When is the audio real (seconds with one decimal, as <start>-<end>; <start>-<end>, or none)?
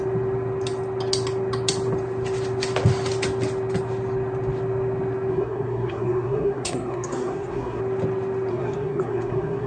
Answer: 0.0-5.3; 7.8-8.5